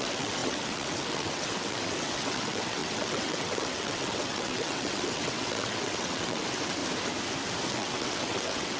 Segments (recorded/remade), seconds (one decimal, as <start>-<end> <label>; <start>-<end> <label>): 0.0-6.8 remade; 6.8-7.7 recorded; 7.7-8.8 remade